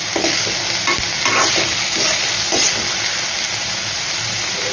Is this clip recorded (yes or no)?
yes